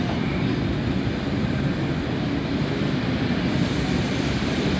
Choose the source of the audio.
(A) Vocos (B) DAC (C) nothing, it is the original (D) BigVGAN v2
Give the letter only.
C